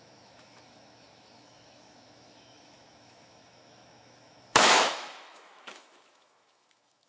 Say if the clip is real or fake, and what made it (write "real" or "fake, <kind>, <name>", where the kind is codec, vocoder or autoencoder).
fake, autoencoder, DAC-VAE